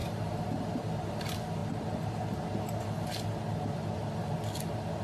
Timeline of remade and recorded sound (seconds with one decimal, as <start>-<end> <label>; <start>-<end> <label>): 0.0-0.9 remade; 0.9-5.0 recorded